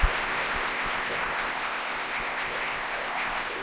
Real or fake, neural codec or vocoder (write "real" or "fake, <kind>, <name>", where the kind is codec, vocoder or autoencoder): fake, codec, ZipCodec